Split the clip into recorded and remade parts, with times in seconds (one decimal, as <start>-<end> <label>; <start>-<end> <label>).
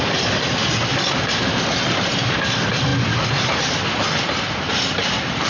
0.0-5.5 recorded